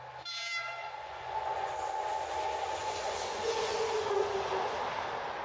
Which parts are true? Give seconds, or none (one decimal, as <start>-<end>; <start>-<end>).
0.0-0.8; 1.7-2.8; 4.4-5.4